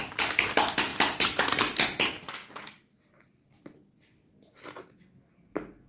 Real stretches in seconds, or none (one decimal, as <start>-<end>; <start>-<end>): 0.0-5.9

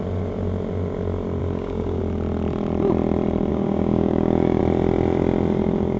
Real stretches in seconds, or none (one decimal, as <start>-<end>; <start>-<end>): 0.0-1.4; 2.0-3.5; 4.6-6.0

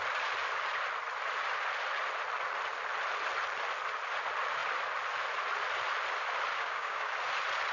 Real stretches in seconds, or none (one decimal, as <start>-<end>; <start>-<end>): 0.0-6.5; 7.1-7.7

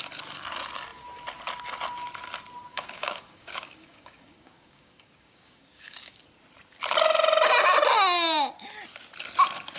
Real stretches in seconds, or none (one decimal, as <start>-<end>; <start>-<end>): 0.0-2.7; 6.2-9.8

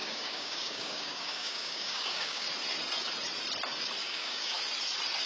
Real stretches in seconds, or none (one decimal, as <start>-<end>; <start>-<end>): 2.5-4.0; 4.6-5.3

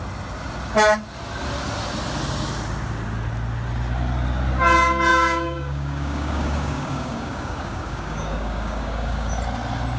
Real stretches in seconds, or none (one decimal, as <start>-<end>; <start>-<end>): 0.0-5.1; 9.3-10.0

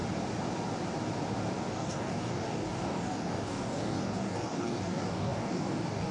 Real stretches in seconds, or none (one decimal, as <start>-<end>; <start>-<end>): 0.0-1.7